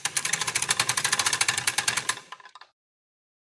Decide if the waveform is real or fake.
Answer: fake